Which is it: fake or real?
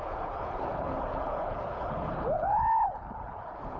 fake